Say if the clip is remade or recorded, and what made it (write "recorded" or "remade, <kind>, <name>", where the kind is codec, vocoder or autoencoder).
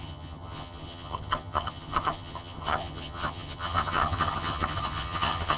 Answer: remade, vocoder, HiFi-GAN